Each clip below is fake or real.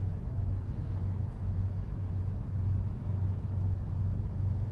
fake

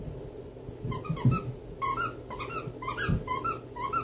real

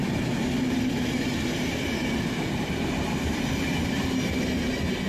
real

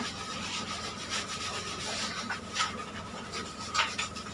real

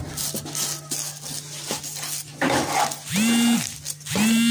real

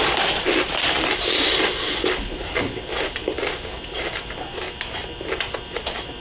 fake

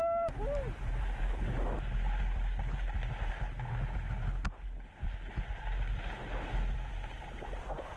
real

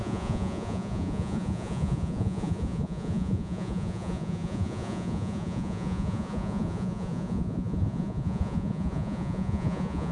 fake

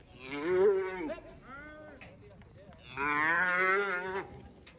real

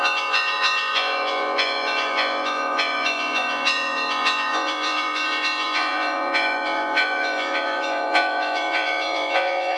fake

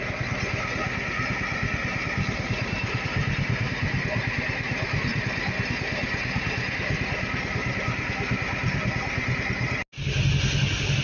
real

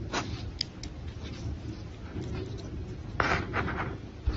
real